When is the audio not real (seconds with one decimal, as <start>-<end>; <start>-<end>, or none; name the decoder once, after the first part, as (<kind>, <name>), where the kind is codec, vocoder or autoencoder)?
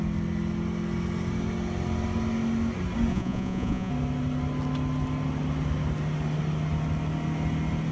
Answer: 3.1-3.9 (vocoder, Vocos)